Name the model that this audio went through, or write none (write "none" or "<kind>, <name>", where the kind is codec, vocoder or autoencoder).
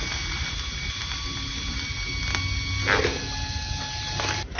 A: none